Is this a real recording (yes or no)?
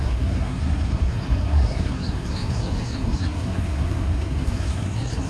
no